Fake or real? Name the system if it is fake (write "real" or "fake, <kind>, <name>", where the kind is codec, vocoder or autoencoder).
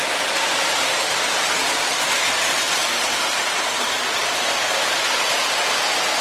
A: real